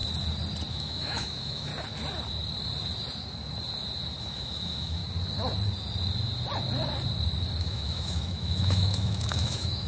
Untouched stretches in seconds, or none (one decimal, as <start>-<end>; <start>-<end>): 0.0-0.7; 1.7-4.2; 5.0-7.6